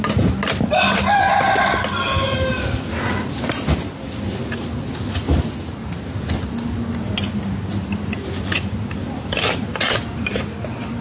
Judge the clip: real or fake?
real